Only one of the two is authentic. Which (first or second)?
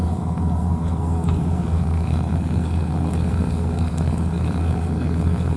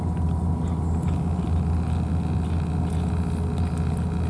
second